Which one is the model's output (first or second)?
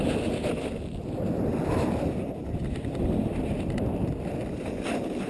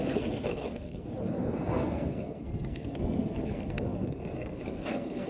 second